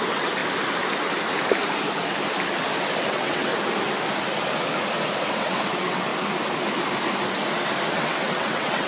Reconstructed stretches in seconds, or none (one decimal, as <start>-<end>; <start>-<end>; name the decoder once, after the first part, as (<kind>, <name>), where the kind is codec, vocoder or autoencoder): 0.0-0.4 (vocoder, WaveNeXt); 3.1-3.5; 5.3-6.1; 7.9-8.9